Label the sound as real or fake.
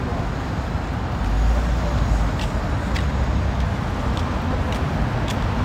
real